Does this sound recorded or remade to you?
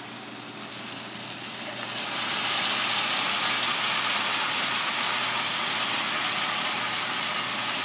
recorded